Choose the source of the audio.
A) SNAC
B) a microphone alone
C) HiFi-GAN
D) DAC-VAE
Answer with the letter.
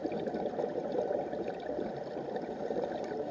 B